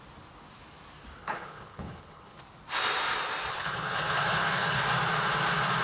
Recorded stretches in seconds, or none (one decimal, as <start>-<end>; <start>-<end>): 0.0-1.2; 2.4-3.5; 4.8-5.8